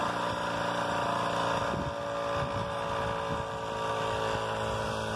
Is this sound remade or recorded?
recorded